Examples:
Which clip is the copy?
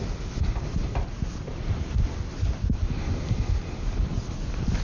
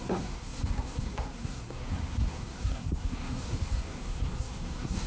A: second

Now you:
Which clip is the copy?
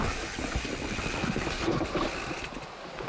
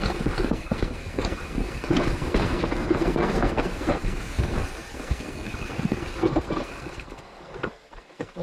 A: second